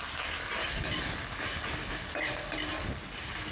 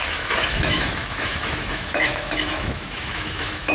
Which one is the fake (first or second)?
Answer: second